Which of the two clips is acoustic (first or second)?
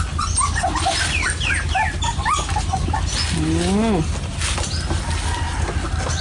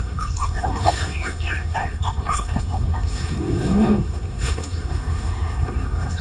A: first